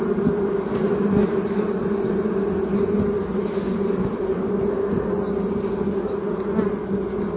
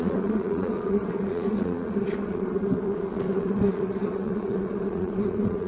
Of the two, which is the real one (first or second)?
first